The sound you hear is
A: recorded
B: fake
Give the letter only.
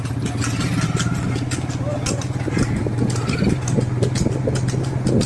A